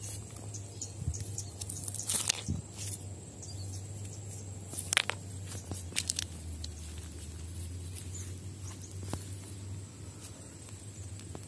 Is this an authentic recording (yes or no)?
yes